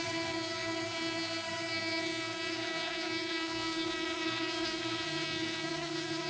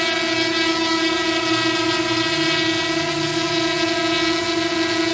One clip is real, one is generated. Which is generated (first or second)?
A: first